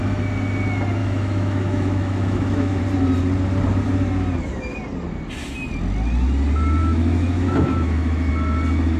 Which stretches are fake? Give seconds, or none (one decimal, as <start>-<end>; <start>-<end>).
1.0-2.8; 6.8-8.3